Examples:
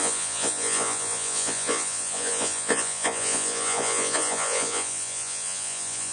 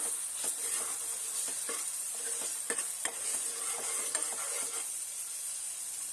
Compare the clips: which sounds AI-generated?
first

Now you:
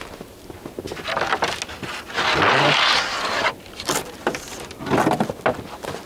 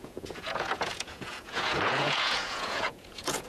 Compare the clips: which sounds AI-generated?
second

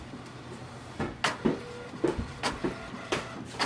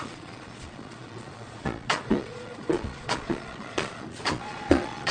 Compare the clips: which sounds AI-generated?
second